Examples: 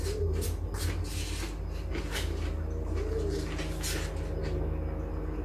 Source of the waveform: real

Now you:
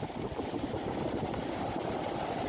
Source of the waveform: real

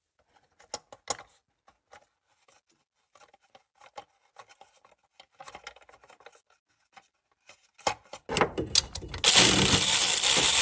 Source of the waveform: real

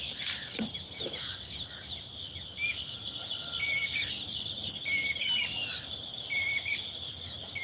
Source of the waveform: fake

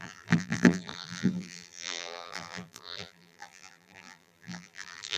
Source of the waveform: fake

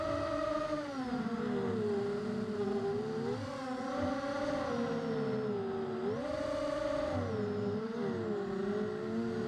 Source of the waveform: real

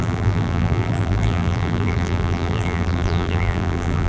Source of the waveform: fake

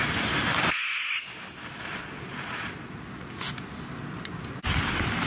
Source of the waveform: real